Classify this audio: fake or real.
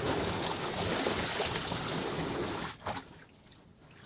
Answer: real